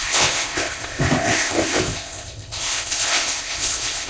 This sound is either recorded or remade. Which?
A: remade